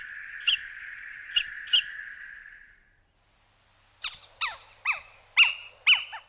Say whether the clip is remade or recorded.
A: recorded